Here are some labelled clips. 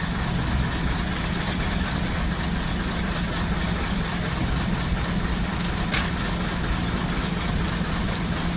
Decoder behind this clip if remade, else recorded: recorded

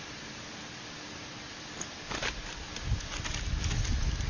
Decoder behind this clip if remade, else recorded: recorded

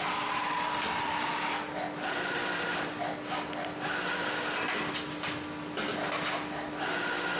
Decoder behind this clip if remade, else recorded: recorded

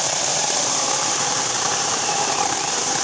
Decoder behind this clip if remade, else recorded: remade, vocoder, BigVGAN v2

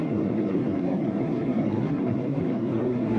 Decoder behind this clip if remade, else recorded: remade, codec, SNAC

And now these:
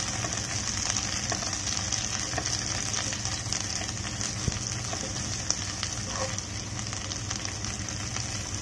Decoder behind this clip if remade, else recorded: recorded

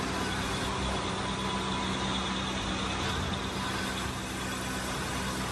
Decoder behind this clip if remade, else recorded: recorded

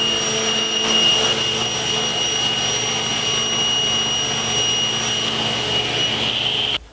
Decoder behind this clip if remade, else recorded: recorded